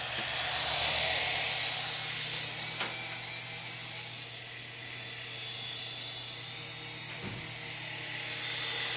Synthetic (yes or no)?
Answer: no